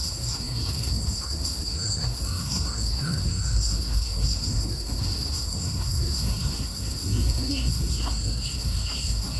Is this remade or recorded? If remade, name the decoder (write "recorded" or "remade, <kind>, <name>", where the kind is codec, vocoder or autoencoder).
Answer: remade, codec, SNAC